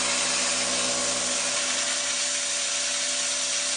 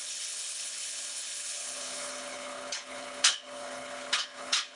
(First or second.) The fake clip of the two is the second